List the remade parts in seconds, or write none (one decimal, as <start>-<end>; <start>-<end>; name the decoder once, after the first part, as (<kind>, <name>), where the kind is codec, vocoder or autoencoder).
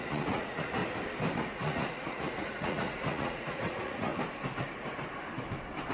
0.0-0.8 (vocoder, Vocos); 1.4-4.1